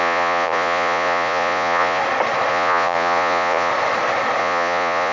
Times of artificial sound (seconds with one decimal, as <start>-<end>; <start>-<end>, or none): 0.0-2.0; 2.5-3.7; 4.4-5.1